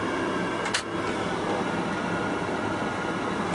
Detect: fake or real real